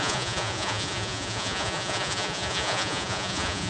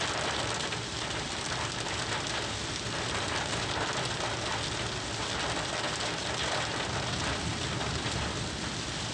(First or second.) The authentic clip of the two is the second